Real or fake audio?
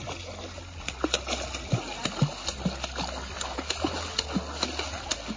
real